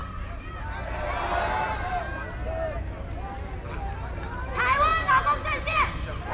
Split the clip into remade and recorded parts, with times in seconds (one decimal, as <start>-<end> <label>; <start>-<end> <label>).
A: 0.0-6.3 recorded